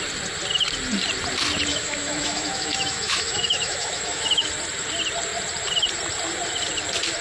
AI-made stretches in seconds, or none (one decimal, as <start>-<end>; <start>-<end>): 1.7-4.5